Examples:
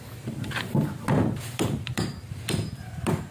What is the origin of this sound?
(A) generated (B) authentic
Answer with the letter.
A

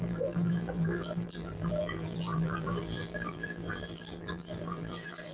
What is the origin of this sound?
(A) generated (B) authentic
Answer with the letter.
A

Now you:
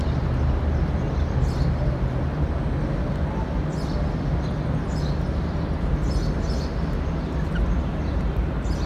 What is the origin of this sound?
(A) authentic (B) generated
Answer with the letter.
A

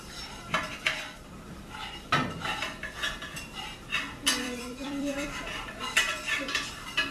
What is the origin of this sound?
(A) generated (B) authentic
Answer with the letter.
A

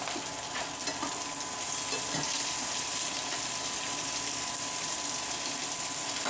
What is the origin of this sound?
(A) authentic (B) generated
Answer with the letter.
A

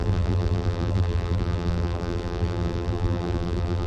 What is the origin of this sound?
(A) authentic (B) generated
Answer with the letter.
B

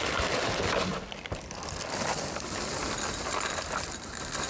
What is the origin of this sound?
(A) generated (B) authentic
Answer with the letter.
A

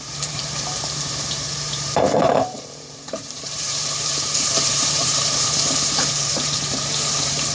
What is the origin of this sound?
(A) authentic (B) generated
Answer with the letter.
B